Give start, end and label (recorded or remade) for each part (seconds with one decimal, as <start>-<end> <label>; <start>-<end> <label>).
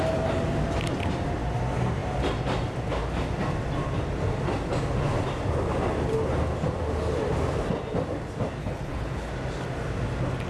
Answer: 0.0-8.6 recorded; 8.6-9.3 remade; 9.3-10.5 recorded